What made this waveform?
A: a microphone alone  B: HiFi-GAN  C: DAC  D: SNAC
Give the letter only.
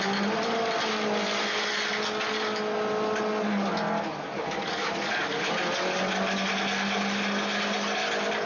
A